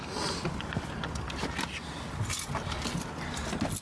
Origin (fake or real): real